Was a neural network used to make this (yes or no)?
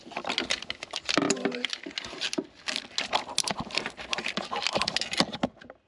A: no